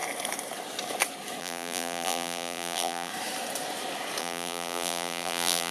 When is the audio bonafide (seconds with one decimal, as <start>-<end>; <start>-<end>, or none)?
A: 0.0-1.4; 3.1-4.2